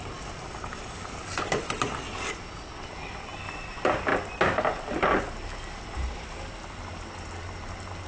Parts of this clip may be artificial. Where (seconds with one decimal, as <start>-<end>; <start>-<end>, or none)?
none